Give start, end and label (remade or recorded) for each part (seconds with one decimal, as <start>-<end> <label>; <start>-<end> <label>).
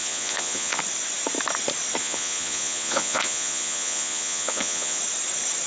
0.0-0.8 remade; 0.8-2.0 recorded; 2.0-5.0 remade; 5.0-5.7 recorded